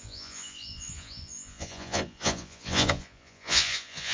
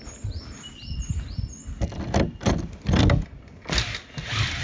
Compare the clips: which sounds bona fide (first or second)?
second